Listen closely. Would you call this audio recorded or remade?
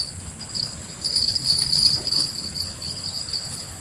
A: remade